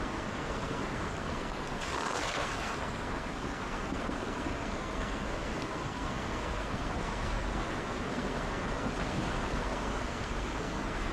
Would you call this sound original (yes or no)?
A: no